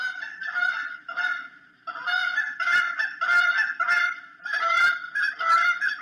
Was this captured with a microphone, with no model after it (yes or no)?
yes